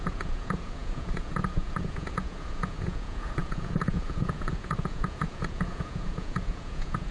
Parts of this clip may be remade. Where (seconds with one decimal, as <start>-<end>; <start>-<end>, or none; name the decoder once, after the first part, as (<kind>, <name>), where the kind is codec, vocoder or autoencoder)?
0.0-7.1 (vocoder, Vocos)